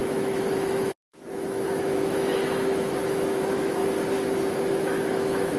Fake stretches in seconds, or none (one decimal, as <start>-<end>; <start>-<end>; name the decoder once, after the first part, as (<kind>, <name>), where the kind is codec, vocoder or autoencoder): 0.0-3.8 (autoencoder, DAC-VAE); 4.6-5.6